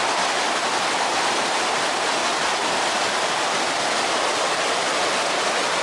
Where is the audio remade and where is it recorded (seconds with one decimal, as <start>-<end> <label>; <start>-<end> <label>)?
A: 0.0-5.8 recorded